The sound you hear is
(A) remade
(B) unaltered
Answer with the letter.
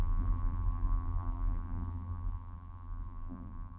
A